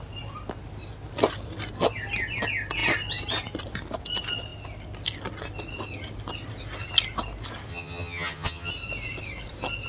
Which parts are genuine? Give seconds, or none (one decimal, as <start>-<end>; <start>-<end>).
0.0-7.7; 8.7-9.9